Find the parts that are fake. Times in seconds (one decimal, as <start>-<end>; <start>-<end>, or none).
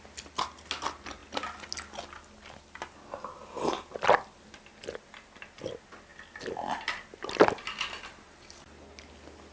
none